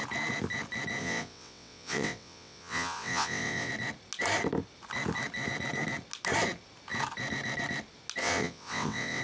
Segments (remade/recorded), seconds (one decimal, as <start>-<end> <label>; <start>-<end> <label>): 0.0-1.0 recorded; 1.0-3.7 remade; 3.7-8.2 recorded; 8.2-9.2 remade

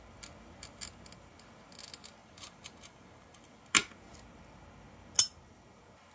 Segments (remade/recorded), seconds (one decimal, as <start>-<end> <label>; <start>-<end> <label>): 0.0-2.2 recorded; 2.2-3.4 remade; 3.4-6.1 recorded

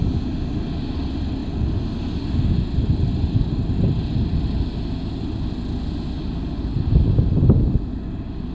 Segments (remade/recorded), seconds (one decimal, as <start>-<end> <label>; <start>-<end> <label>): 0.0-8.5 recorded